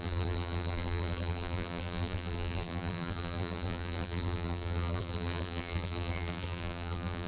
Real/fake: fake